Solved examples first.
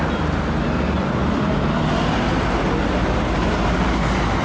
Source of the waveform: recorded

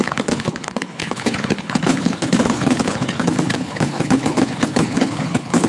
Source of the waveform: remade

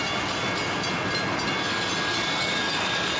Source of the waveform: recorded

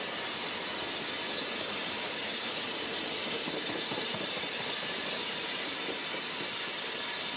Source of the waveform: remade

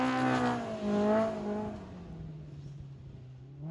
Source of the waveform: recorded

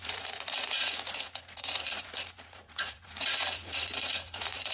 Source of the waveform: remade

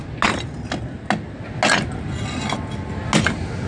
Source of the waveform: recorded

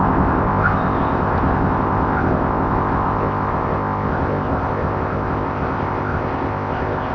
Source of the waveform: remade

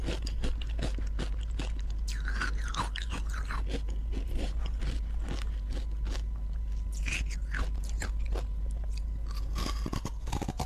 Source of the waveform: recorded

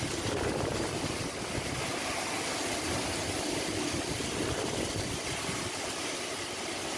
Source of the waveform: recorded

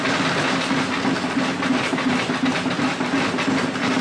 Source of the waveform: recorded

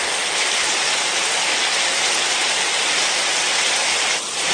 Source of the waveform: recorded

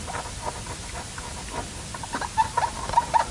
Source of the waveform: recorded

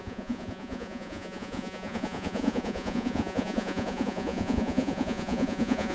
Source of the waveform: remade